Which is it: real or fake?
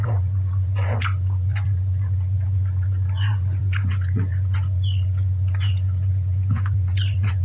fake